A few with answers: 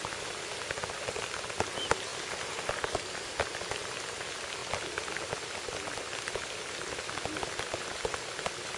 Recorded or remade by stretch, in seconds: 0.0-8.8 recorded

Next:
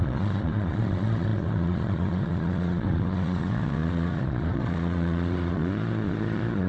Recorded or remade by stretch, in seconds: 0.0-6.7 remade

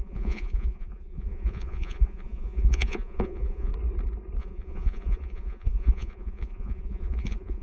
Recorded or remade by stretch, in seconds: 0.0-3.7 remade; 3.7-4.4 recorded; 4.4-7.6 remade

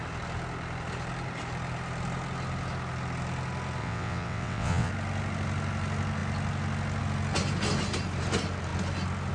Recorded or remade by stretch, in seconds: 0.0-3.8 recorded; 3.8-4.9 remade; 4.9-9.3 recorded

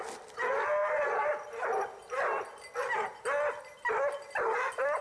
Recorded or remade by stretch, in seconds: 0.0-5.0 recorded

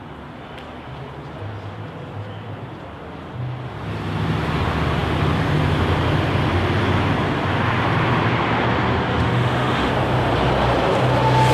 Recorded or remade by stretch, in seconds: 0.0-9.1 recorded; 9.1-9.9 remade; 9.9-11.5 recorded

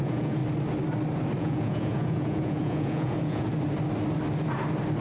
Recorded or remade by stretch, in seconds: 0.0-0.4 remade; 0.4-1.4 recorded; 1.4-3.5 remade; 3.5-5.0 recorded